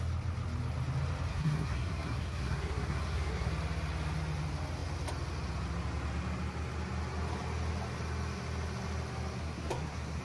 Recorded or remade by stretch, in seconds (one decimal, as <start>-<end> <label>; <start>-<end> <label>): 0.0-1.3 recorded; 1.3-3.5 remade; 3.5-9.4 recorded; 9.4-10.2 remade